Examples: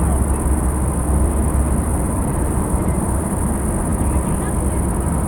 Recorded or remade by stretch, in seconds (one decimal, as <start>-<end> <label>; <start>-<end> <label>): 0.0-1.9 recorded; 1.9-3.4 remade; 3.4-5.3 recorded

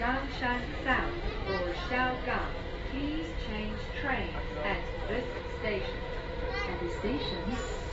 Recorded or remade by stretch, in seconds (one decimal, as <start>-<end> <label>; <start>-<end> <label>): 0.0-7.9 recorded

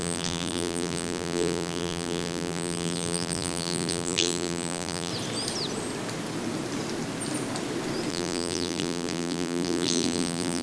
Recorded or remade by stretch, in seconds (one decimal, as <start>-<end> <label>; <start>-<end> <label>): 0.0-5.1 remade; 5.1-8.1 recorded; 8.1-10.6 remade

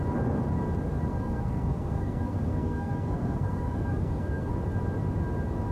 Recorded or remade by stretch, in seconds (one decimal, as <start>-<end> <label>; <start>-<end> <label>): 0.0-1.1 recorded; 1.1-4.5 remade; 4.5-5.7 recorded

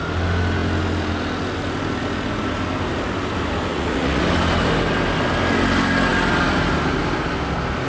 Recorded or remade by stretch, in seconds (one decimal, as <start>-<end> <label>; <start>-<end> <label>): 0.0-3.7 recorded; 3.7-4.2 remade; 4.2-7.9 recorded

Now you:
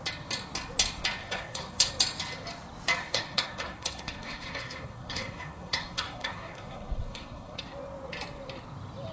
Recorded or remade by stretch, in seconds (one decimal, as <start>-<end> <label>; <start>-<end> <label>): 0.0-1.2 recorded; 1.2-1.9 remade; 1.9-3.0 recorded; 3.0-7.6 remade; 7.6-9.1 recorded

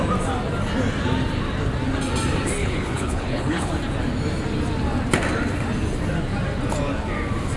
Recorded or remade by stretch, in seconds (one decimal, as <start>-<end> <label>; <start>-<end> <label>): 0.0-2.6 recorded; 2.6-3.7 remade; 3.7-7.6 recorded

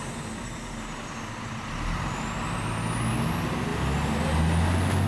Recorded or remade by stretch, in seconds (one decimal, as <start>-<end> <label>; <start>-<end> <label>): 0.0-5.1 recorded